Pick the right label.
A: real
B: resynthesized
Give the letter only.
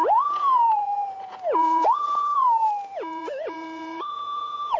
B